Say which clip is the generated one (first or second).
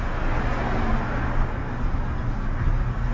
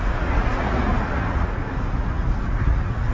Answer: second